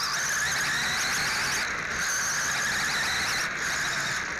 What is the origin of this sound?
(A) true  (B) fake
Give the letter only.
A